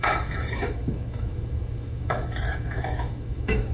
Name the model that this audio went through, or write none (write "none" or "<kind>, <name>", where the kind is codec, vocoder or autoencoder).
autoencoder, DAC-VAE